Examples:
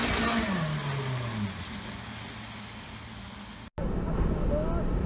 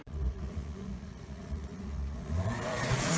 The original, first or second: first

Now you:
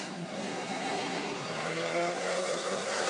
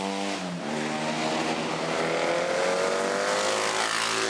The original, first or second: second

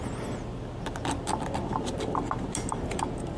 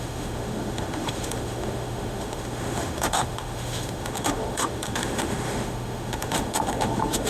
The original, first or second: first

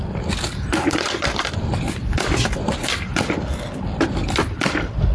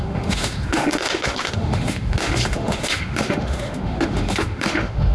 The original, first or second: first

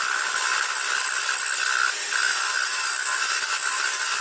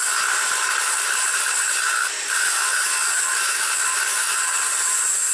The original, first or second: first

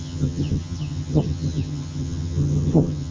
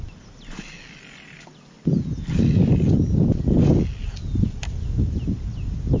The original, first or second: second